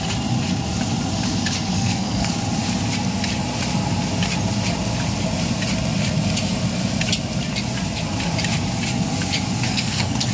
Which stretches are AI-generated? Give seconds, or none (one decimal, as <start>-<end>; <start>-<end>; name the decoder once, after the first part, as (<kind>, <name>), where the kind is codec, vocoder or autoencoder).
1.7-2.3 (codec, SNAC); 9.7-10.3